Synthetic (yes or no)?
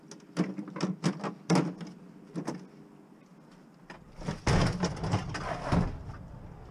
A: no